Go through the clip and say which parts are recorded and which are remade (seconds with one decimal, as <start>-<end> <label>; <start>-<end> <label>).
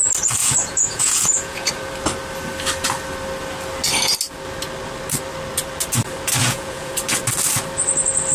0.0-0.4 recorded; 0.4-1.7 remade; 1.7-6.4 recorded; 6.4-6.9 remade; 6.9-8.3 recorded